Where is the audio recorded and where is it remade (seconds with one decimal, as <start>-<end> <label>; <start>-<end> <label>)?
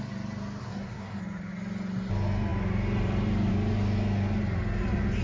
0.0-0.6 recorded; 0.6-1.2 remade; 1.2-5.2 recorded